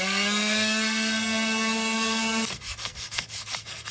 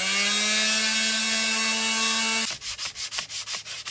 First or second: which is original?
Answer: second